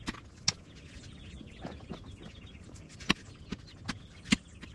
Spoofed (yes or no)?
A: no